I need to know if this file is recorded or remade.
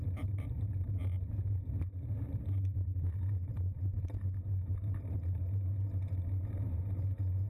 remade